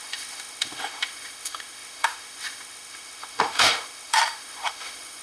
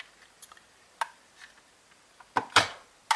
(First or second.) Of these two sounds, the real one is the second